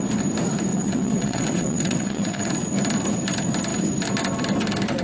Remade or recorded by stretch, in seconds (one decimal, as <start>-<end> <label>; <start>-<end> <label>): 0.0-0.7 recorded; 0.7-2.5 remade; 2.5-5.0 recorded